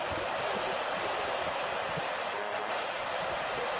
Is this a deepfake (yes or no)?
no